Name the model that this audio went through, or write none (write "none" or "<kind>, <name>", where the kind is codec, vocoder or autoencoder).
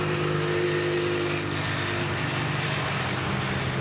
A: none